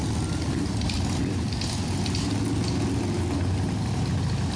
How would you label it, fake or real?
real